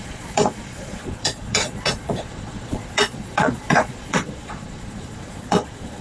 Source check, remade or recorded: remade